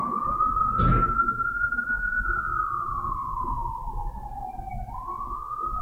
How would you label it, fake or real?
real